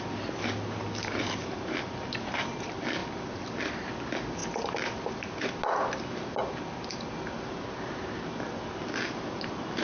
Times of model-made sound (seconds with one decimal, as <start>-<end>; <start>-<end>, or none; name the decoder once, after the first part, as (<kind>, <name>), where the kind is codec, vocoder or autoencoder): 3.0-3.9 (vocoder, BigVGAN v2); 4.4-5.1

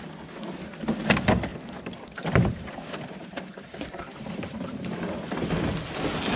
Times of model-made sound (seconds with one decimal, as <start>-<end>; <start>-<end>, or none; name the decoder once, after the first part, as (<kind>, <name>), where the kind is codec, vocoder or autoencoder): 1.5-5.3 (vocoder, BigVGAN v2)

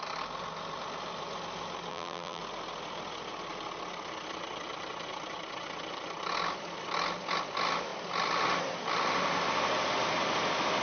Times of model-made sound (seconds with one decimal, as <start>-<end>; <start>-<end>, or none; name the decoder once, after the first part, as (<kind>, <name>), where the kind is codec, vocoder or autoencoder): 1.9-2.4 (vocoder, BigVGAN v2)

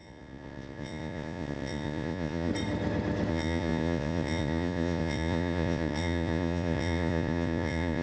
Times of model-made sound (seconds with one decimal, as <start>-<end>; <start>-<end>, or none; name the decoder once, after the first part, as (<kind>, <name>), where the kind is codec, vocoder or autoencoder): 0.0-2.5 (vocoder, Vocos); 3.3-8.0

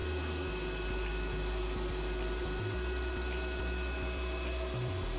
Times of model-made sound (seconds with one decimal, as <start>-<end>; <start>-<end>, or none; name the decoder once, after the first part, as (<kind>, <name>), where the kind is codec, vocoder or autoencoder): none

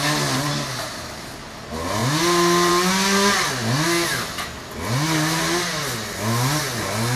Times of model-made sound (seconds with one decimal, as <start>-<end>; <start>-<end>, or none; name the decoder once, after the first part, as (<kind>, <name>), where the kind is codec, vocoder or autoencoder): none

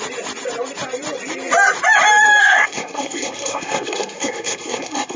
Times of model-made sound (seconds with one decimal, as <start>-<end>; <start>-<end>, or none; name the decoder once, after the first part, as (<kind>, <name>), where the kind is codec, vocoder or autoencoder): 2.4-5.2 (codec, SNAC)